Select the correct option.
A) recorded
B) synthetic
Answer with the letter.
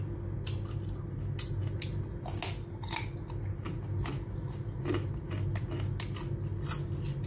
A